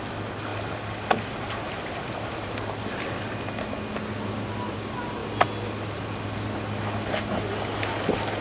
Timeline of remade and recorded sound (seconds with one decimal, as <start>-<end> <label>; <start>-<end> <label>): 0.0-8.4 recorded